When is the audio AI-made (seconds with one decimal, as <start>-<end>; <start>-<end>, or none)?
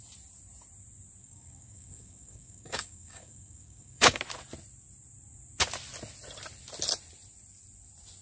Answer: 1.2-4.2